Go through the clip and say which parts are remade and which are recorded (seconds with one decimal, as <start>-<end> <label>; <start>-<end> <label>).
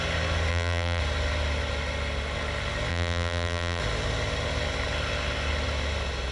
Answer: 0.0-0.5 recorded; 0.5-1.0 remade; 1.0-2.9 recorded; 2.9-3.8 remade; 3.8-6.3 recorded